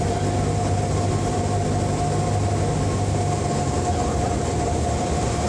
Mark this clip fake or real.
real